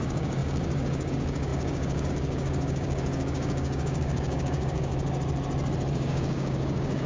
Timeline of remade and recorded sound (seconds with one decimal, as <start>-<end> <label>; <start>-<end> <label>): 0.0-4.9 remade; 4.9-5.9 recorded; 5.9-7.1 remade